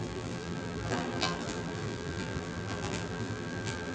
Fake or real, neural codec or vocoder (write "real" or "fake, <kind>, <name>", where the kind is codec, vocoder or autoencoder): fake, vocoder, BigVGAN v2